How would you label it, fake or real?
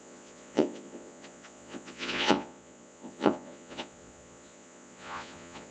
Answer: fake